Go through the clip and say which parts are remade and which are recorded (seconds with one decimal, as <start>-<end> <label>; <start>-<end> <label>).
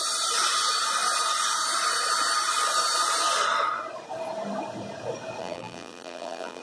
0.0-5.4 recorded; 5.4-6.6 remade